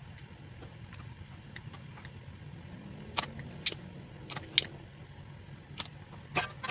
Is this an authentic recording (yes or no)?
yes